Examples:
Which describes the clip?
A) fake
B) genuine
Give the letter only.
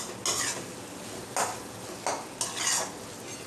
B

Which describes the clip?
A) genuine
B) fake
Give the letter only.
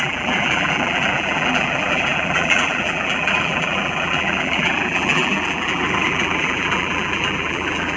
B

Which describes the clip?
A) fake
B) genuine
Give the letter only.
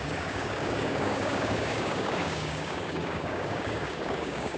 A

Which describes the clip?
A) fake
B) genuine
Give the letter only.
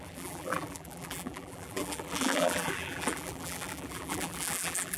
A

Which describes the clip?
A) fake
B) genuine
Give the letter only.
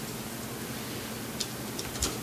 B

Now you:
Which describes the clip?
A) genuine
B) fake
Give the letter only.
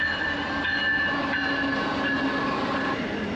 A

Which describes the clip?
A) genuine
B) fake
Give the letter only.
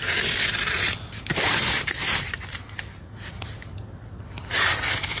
A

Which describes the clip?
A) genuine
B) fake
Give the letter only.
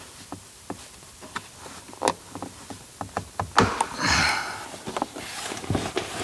A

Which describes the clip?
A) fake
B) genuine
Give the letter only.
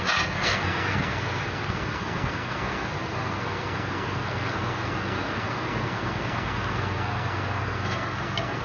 A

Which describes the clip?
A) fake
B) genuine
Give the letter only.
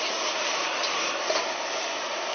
B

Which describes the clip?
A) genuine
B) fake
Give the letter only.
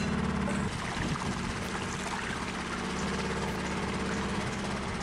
A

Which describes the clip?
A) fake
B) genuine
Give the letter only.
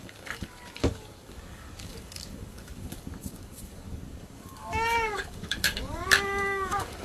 A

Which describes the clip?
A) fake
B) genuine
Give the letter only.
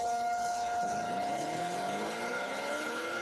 A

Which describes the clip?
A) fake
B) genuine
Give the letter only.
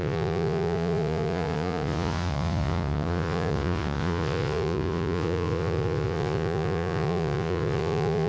A